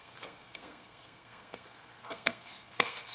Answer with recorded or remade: remade